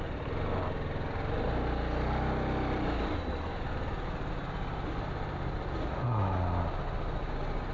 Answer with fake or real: real